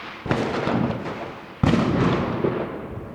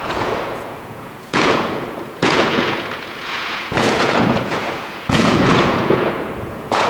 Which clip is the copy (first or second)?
second